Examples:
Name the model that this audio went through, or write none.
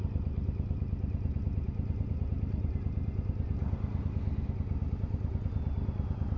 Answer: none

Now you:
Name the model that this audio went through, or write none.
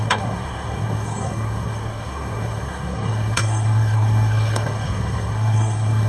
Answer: codec, SNAC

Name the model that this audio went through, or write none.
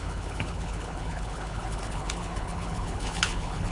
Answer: codec, HILCodec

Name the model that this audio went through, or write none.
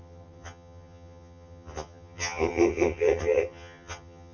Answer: vocoder, HiFi-GAN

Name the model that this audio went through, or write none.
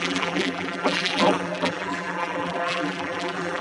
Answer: vocoder, BigVGAN v2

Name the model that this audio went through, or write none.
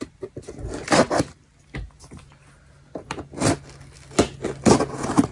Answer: none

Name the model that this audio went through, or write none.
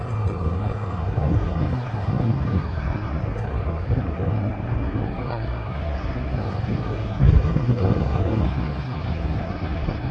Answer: codec, SNAC